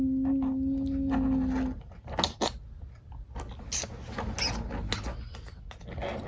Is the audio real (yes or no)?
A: yes